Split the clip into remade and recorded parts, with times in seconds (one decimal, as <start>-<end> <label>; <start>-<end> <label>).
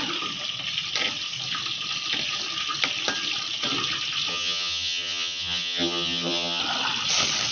0.0-4.3 recorded; 4.3-6.6 remade; 6.6-7.5 recorded